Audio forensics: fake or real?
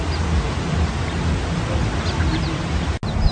real